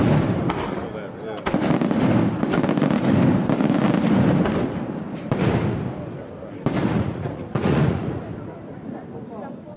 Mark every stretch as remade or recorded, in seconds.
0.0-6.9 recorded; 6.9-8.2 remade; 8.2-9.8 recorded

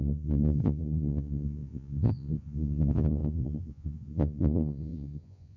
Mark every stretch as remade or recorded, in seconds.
0.0-5.6 remade

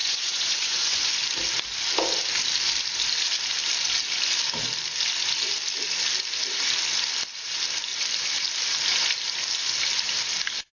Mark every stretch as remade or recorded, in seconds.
0.0-1.2 remade; 1.2-10.8 recorded